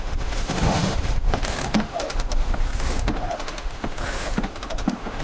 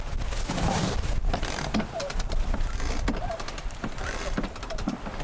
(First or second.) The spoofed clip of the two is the first